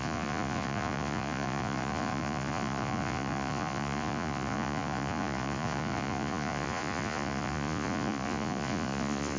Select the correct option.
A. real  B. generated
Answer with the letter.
B